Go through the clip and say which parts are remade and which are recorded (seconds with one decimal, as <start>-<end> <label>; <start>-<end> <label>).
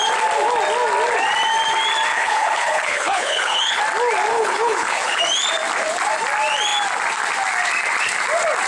0.0-2.1 recorded; 2.1-3.8 remade; 3.8-4.3 recorded; 4.3-5.2 remade; 5.2-8.7 recorded